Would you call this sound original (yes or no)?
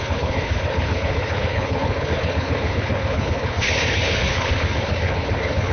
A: no